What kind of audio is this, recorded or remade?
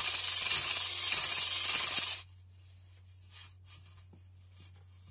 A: recorded